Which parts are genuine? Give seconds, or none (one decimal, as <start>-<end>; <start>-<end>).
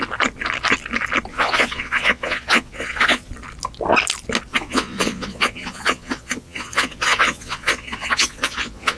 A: 0.0-1.3; 3.3-4.5